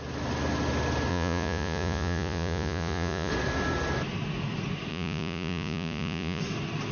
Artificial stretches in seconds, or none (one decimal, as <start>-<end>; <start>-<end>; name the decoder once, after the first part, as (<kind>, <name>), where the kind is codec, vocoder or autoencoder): 1.1-3.3 (vocoder, Vocos); 4.9-6.4